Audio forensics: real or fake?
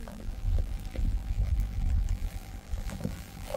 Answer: fake